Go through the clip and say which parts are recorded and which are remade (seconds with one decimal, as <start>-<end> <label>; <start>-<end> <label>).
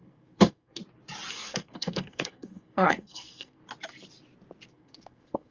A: 0.0-0.8 remade; 0.8-1.3 recorded; 1.3-3.6 remade; 3.6-4.7 recorded; 4.7-5.5 remade